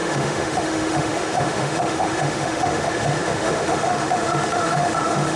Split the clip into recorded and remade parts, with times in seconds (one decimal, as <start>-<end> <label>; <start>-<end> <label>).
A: 0.0-5.4 remade